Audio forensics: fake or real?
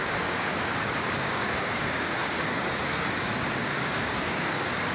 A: fake